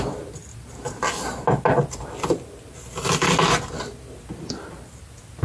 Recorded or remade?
recorded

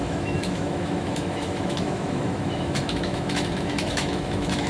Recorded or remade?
remade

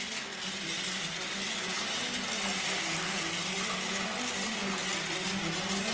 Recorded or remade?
recorded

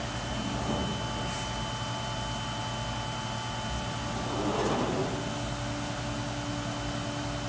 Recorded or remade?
recorded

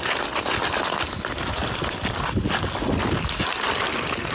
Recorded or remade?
recorded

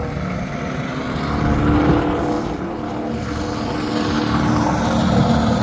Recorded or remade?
recorded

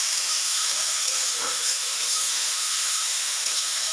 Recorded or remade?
remade